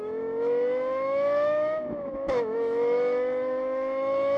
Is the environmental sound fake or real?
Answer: fake